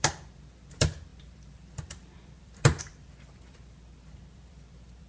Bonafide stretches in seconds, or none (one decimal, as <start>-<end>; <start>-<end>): none